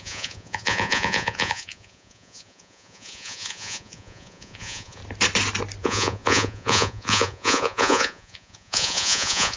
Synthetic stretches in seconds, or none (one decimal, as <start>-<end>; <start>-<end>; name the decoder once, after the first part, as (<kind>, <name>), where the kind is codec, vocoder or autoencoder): 0.0-5.0 (vocoder, Vocos); 5.8-9.6